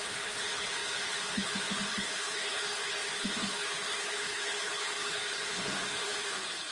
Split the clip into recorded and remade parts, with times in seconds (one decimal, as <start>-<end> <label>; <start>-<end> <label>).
0.0-6.7 remade